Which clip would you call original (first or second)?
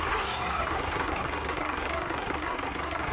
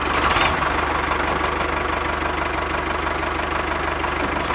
second